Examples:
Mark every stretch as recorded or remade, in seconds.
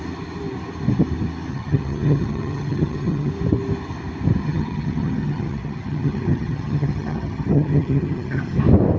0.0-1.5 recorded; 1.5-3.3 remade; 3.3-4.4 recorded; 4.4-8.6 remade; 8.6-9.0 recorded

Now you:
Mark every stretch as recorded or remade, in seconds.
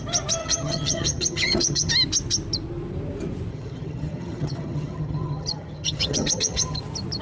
0.0-0.4 recorded; 0.4-1.9 remade; 1.9-3.5 recorded; 3.5-6.8 remade; 6.8-7.2 recorded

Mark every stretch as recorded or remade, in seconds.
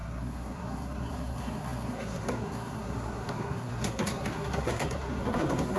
0.0-5.8 remade